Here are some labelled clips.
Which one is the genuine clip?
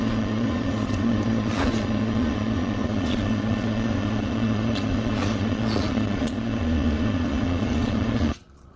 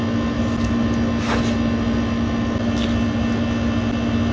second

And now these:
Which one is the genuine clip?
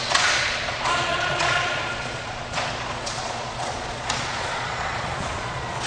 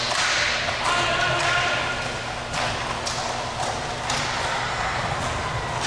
second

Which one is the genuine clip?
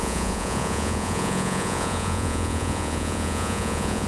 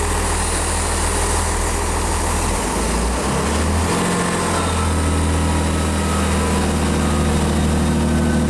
second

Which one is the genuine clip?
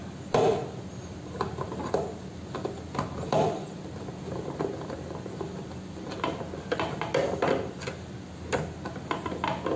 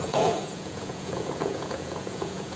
first